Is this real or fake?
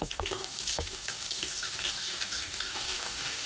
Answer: fake